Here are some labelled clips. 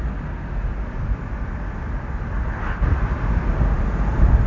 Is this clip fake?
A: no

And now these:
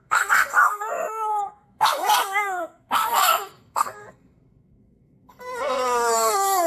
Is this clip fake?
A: yes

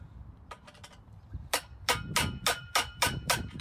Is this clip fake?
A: yes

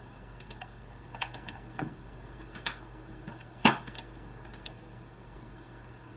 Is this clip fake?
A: yes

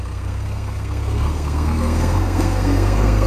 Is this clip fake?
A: yes